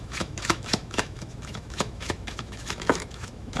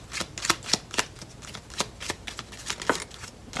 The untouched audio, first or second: second